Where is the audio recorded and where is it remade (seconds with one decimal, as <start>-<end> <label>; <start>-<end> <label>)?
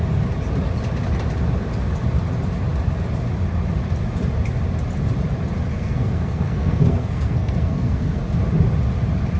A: 0.0-5.7 recorded; 5.7-8.2 remade; 8.2-9.4 recorded